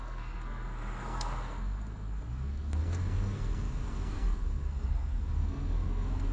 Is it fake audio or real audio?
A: fake